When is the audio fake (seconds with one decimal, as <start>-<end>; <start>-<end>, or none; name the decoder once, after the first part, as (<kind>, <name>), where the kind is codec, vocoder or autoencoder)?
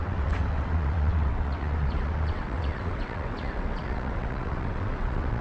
0.0-5.4 (vocoder, WaveNeXt)